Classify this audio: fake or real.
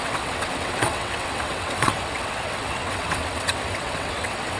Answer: fake